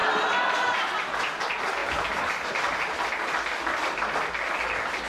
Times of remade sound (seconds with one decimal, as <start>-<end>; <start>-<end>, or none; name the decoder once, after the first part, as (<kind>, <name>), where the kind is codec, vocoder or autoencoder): none